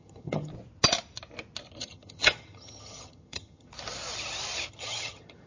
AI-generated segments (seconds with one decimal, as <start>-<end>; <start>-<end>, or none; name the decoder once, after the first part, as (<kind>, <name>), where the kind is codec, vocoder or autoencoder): 0.0-0.5 (vocoder, HiFi-GAN); 1.8-3.7; 4.7-5.5